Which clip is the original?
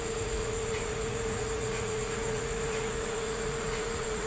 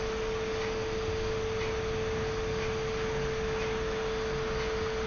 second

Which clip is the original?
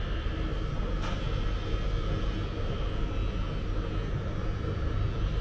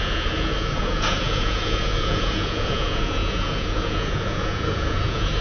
first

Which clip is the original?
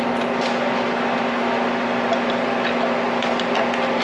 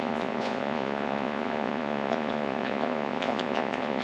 first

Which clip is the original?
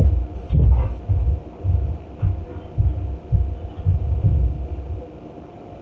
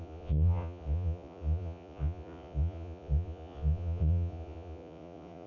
first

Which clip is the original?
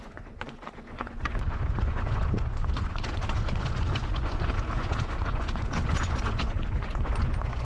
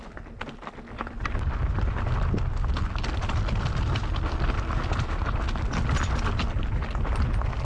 second